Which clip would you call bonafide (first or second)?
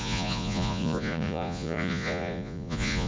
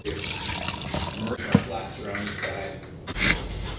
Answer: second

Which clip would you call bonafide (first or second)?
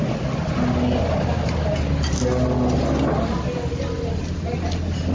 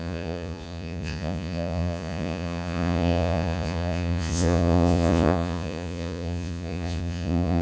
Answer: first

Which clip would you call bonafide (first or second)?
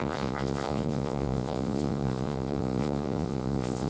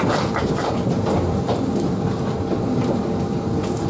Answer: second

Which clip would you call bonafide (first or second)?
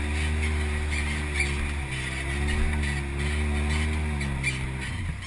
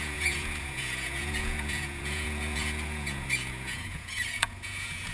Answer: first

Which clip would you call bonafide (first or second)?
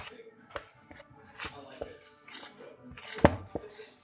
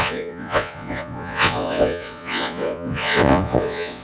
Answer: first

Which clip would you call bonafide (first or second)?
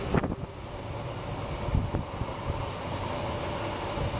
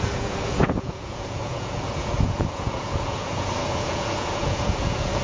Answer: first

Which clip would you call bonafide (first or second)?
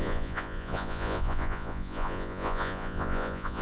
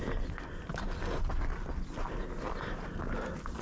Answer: second